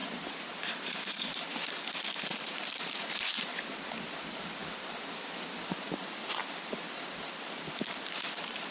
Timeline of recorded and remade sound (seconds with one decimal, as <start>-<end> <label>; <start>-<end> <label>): 0.0-8.7 remade